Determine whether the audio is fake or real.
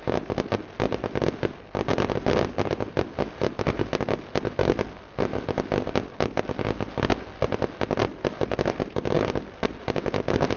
real